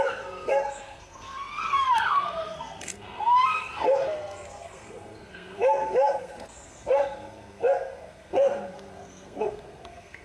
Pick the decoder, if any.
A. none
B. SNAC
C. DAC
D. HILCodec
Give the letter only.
B